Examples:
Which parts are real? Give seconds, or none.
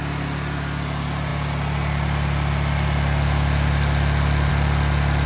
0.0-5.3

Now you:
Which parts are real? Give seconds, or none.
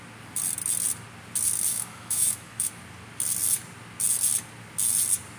0.0-1.7; 2.7-5.4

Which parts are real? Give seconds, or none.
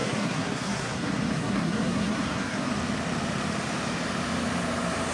2.7-5.1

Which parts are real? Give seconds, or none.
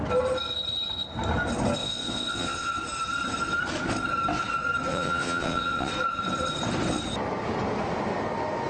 0.0-1.8; 2.8-4.9; 5.9-8.7